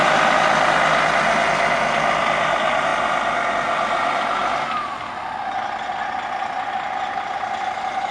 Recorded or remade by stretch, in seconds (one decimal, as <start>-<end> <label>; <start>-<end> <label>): 0.0-8.1 recorded